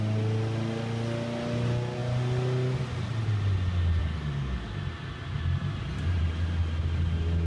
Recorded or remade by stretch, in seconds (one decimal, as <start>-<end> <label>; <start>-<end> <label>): 0.0-4.0 recorded; 4.0-4.7 remade; 4.7-7.5 recorded